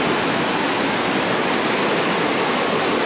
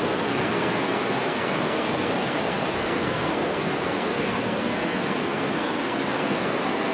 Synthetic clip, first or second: second